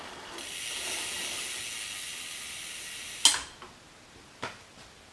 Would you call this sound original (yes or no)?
yes